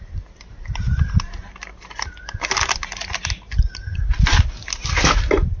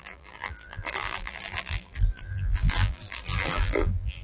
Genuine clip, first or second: first